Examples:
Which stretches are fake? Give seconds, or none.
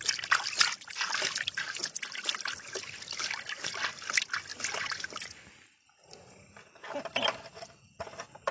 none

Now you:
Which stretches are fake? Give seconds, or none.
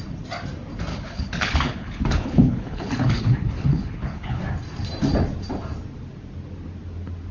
0.9-4.4 (codec, HILCodec)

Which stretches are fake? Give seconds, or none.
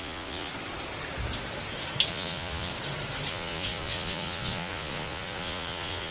0.0-0.5 (vocoder, Vocos); 2.1-2.7; 3.3-6.1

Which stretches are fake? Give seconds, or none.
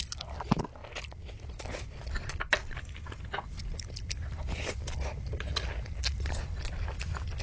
none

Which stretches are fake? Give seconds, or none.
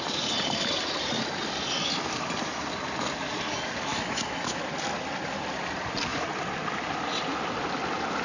3.9-4.6 (autoencoder, DAC-VAE)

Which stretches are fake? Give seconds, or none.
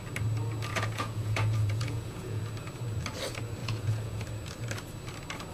0.7-2.4 (vocoder, Vocos); 3.6-4.2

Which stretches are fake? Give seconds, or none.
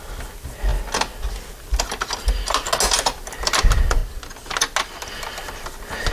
none